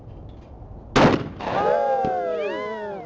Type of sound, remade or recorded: recorded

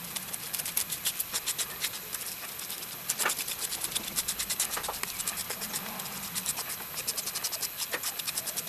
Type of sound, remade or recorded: recorded